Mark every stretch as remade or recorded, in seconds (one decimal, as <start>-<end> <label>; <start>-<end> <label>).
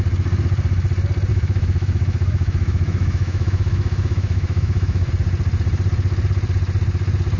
0.0-1.3 recorded; 1.3-5.1 remade; 5.1-7.4 recorded